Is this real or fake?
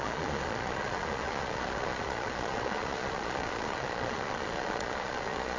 fake